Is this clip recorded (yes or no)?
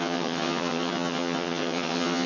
no